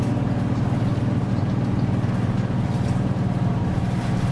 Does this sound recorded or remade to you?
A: recorded